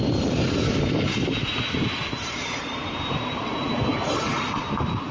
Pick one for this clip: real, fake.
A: real